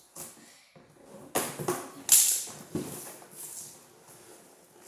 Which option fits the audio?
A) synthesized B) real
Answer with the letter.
B